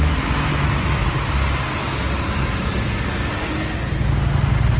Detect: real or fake real